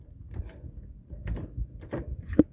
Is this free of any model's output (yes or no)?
yes